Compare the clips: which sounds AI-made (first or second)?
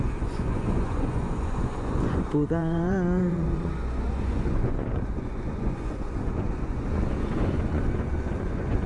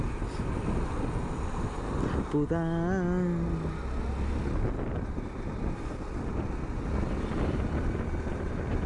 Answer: first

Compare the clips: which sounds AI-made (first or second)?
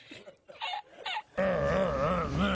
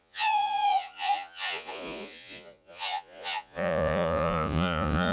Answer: second